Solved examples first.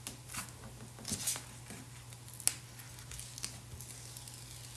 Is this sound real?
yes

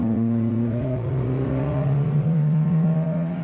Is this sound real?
no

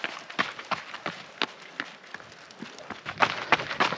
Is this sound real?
yes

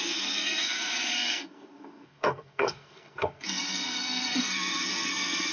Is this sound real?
no